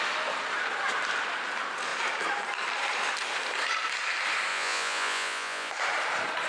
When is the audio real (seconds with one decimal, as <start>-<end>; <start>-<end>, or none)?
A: 0.0-4.5; 5.7-6.5